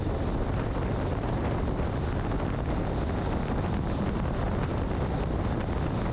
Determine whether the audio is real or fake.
real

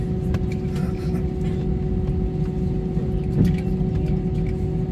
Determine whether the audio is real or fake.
real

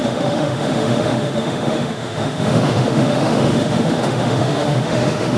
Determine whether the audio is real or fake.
fake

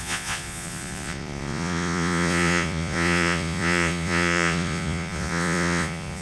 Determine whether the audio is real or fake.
fake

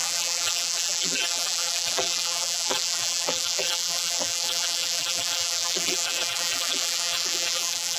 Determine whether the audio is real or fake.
fake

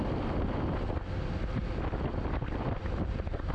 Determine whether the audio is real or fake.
real